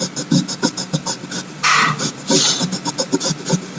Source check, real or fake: real